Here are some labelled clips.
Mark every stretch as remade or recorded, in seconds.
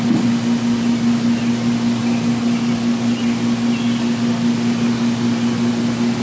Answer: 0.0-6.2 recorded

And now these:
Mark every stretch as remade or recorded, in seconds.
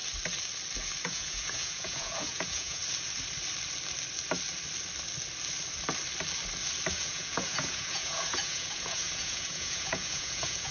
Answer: 0.0-1.0 recorded; 1.0-2.8 remade; 2.8-6.9 recorded; 6.9-10.7 remade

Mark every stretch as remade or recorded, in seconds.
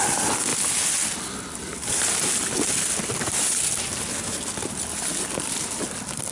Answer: 0.0-6.3 recorded